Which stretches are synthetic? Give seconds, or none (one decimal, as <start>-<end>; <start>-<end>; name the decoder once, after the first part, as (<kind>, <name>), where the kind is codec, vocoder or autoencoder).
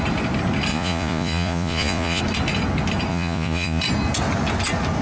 0.7-2.2 (vocoder, Vocos); 3.1-3.8